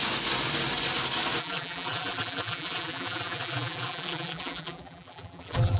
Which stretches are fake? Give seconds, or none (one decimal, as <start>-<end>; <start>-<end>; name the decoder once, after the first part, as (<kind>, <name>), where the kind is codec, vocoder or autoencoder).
1.4-5.8 (vocoder, BigVGAN v2)